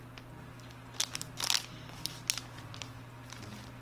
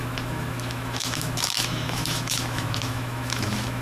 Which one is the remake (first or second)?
second